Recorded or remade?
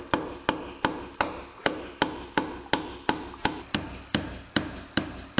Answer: recorded